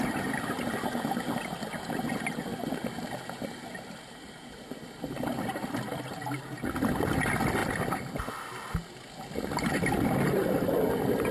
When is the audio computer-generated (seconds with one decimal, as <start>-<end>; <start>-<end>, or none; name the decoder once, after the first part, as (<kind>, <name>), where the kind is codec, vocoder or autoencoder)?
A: none